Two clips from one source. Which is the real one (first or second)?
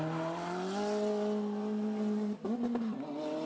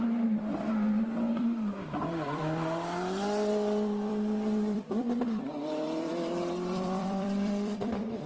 first